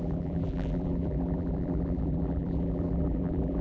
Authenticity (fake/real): fake